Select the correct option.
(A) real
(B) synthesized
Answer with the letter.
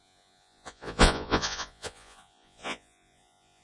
B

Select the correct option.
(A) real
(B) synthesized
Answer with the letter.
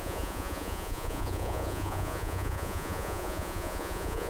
B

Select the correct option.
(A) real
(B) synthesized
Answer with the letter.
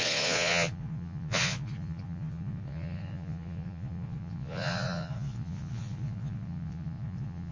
B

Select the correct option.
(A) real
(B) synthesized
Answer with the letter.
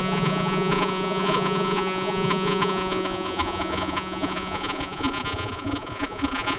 B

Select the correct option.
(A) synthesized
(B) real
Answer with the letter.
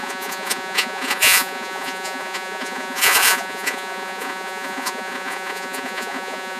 A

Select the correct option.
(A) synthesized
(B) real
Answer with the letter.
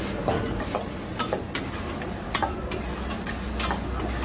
B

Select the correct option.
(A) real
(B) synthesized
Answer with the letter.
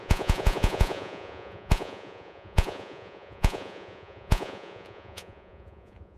B